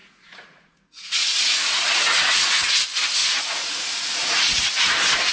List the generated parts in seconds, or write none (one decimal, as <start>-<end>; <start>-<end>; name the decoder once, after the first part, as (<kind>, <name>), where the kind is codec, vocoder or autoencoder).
0.0-2.7 (vocoder, Vocos); 3.2-3.8; 4.2-4.7